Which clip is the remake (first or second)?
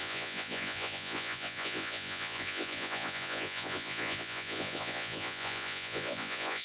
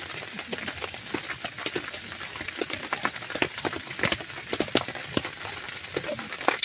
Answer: first